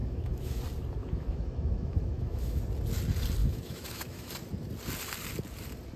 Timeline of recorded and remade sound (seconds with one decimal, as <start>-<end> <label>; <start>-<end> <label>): 0.0-0.6 remade; 0.6-1.0 recorded; 1.0-2.6 remade; 2.6-3.4 recorded; 3.4-4.3 remade; 4.3-6.0 recorded